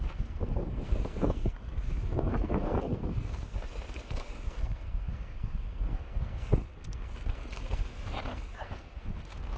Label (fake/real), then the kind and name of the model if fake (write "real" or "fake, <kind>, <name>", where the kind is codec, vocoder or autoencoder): fake, codec, SNAC